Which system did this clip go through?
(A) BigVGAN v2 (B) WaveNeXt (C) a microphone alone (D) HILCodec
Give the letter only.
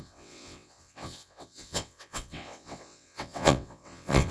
B